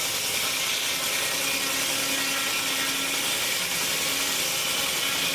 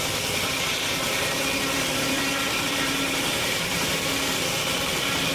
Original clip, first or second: first